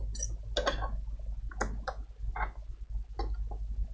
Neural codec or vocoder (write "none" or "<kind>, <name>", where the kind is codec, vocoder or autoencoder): none